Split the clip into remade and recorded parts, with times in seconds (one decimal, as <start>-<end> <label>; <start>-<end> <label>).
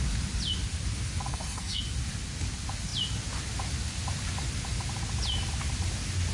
0.0-1.3 recorded; 1.3-1.8 remade; 1.8-6.3 recorded